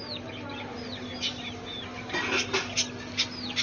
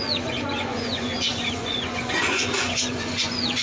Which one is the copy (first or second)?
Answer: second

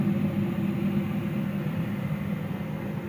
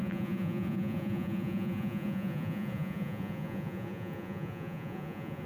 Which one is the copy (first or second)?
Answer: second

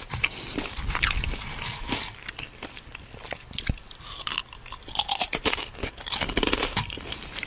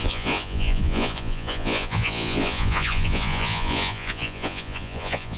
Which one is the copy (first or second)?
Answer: second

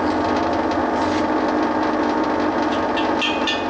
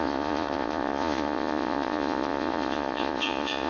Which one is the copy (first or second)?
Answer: second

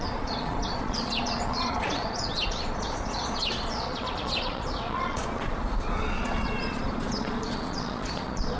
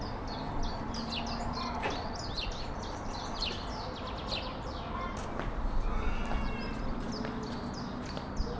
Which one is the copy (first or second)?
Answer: first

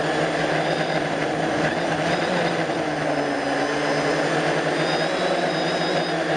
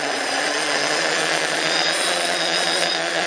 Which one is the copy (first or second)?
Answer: second